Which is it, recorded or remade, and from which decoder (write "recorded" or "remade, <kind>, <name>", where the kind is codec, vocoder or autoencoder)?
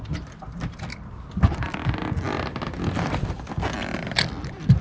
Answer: recorded